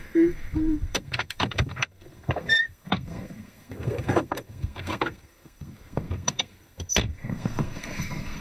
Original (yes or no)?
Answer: no